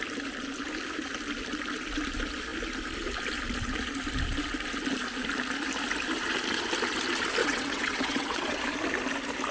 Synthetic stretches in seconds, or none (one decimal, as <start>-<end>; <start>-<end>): 7.4-8.6